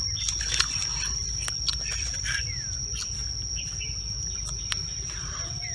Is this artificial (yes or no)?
no